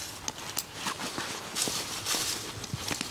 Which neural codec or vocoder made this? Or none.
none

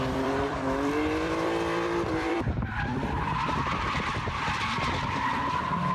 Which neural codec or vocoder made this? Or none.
vocoder, BigVGAN v2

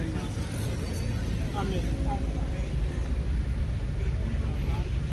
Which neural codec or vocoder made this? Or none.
none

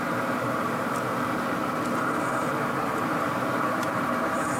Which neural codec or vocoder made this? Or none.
vocoder, BigVGAN v2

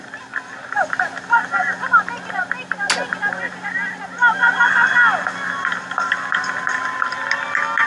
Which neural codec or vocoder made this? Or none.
none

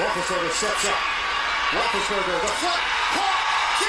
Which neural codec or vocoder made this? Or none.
none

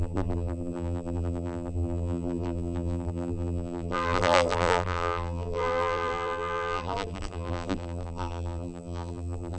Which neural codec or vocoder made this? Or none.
vocoder, BigVGAN v2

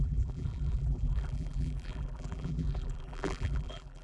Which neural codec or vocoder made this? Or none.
vocoder, BigVGAN v2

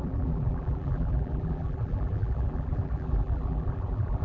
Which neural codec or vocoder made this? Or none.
vocoder, BigVGAN v2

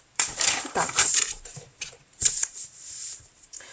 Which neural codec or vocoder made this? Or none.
vocoder, BigVGAN v2